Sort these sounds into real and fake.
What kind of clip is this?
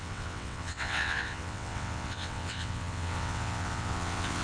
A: fake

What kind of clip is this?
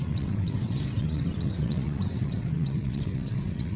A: fake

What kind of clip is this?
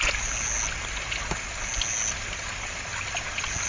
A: real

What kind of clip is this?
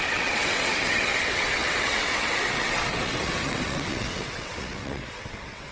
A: fake